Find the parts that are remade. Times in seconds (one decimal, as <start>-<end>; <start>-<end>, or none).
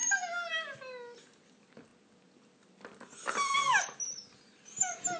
none